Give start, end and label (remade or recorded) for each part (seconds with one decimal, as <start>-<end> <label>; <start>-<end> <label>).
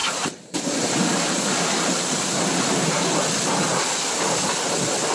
0.0-3.1 remade; 3.1-5.1 recorded